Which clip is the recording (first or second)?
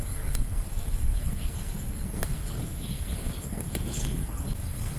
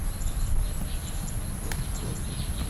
second